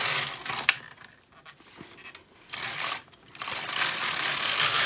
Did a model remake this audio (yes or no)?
no